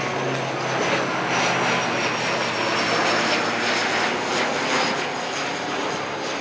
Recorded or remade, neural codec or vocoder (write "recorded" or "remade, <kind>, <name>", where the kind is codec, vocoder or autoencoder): recorded